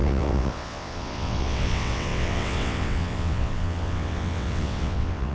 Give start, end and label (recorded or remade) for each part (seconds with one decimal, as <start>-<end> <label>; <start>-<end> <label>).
0.0-5.3 remade